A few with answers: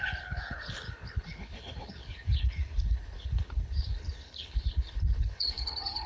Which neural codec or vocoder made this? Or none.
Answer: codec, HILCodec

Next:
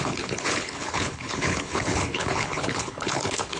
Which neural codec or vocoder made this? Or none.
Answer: codec, HILCodec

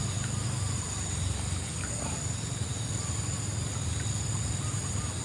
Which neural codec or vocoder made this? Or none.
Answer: none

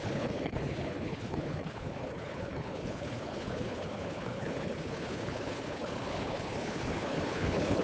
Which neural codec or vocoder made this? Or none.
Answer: codec, HILCodec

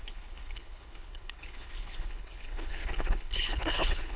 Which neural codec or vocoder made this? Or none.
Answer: codec, HILCodec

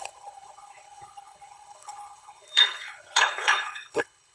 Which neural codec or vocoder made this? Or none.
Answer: codec, HILCodec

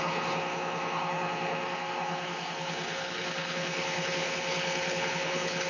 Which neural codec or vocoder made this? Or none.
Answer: codec, HILCodec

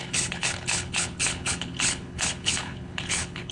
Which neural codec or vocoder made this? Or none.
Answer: codec, HILCodec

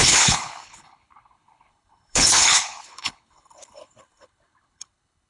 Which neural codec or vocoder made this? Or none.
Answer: codec, HILCodec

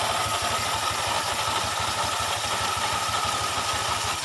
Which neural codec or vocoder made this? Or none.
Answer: none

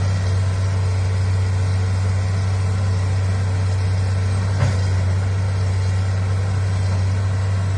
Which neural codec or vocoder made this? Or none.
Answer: none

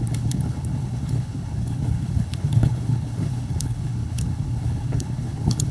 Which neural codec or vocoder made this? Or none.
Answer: codec, HILCodec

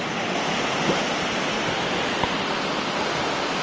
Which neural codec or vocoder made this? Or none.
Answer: none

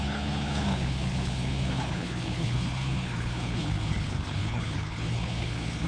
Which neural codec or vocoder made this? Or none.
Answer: codec, HILCodec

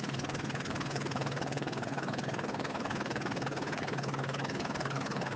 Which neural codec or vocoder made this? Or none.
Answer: codec, HILCodec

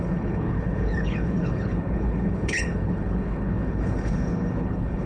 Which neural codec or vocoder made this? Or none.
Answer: codec, HILCodec